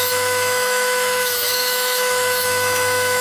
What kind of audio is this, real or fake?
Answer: fake